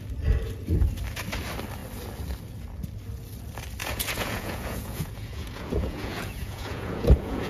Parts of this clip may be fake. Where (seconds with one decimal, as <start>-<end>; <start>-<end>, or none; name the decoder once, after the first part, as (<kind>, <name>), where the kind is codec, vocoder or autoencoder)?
3.8-7.5 (vocoder, Vocos)